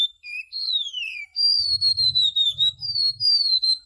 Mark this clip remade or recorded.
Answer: remade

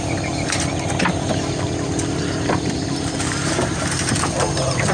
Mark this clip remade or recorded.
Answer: remade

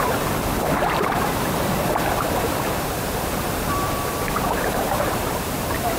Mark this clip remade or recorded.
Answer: remade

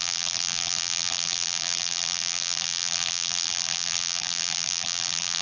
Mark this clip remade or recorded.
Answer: remade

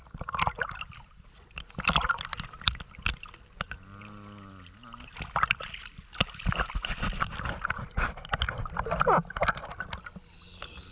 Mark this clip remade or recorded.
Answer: recorded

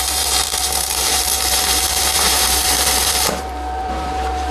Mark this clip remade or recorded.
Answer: remade